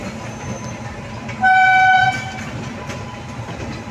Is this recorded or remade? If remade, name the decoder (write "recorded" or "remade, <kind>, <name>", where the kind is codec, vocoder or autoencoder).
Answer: recorded